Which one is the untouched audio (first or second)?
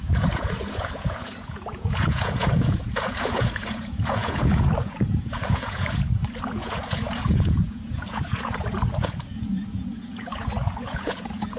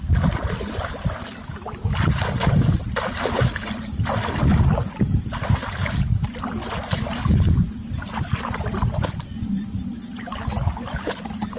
second